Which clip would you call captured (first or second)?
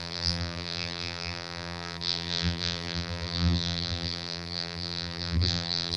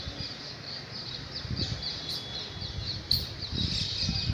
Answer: second